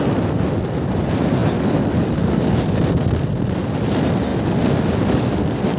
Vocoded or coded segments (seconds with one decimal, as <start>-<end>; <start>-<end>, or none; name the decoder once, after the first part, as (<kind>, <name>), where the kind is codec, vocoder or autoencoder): none